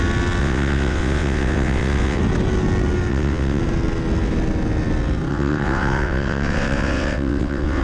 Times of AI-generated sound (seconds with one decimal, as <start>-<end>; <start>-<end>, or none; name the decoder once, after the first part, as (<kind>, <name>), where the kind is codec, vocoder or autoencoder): 0.4-2.2 (vocoder, WaveNeXt); 3.1-3.6; 5.3-7.8